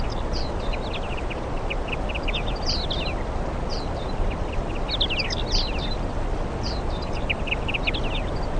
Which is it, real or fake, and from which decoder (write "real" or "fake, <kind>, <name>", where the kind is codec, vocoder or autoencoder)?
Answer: real